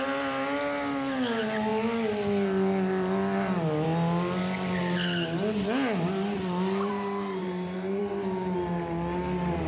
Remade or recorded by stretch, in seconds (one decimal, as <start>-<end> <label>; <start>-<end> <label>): 0.0-7.4 recorded; 7.4-8.0 remade; 8.0-9.7 recorded